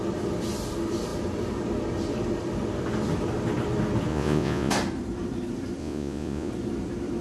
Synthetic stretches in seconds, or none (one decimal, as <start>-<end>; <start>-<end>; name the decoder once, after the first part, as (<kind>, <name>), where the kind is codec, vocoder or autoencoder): 4.1-4.7 (vocoder, Vocos); 5.8-6.5